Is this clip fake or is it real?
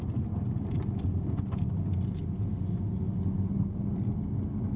real